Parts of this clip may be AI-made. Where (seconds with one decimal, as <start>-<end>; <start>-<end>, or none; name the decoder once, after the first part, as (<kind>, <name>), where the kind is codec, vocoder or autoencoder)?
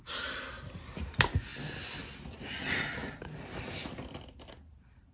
none